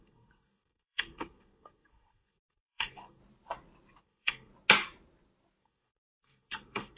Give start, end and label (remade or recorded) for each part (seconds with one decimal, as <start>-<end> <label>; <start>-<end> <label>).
0.0-3.2 remade; 3.2-4.0 recorded; 4.0-4.5 remade; 4.5-5.6 recorded; 5.6-7.0 remade

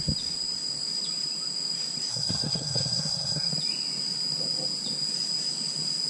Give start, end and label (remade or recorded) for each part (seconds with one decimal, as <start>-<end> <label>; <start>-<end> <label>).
0.0-2.1 recorded; 2.1-3.5 remade; 3.5-6.1 recorded

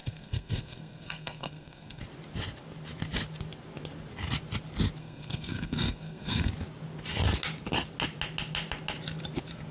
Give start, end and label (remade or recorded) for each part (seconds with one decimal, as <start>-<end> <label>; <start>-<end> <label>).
0.0-2.0 remade; 2.0-5.0 recorded; 5.0-6.5 remade; 6.5-9.7 recorded

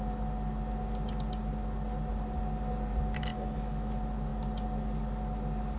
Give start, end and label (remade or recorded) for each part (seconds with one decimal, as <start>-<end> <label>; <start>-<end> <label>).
0.0-3.3 recorded; 3.3-3.9 remade; 3.9-5.8 recorded

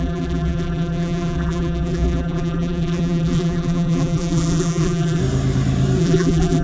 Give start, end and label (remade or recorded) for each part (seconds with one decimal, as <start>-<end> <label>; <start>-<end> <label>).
0.0-5.2 remade; 5.2-6.0 recorded; 6.0-6.6 remade

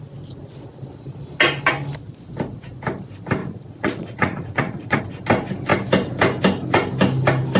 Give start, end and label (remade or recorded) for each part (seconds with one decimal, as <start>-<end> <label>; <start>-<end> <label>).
0.0-3.4 recorded; 3.4-5.0 remade; 5.0-7.6 recorded

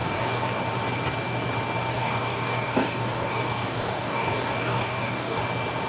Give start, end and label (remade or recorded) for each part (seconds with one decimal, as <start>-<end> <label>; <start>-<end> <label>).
0.0-0.6 remade; 0.6-1.9 recorded; 1.9-5.4 remade; 5.4-5.9 recorded